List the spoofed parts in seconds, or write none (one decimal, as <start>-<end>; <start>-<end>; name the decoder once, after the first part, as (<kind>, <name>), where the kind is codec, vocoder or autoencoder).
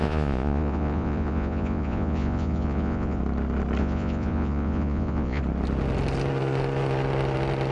0.0-3.2 (vocoder, Vocos); 3.8-5.4